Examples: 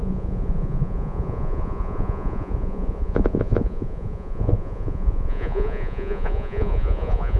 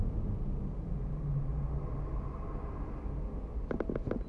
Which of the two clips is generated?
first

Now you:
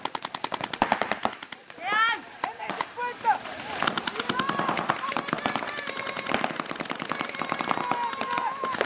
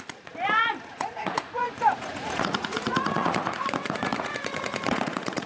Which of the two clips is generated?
second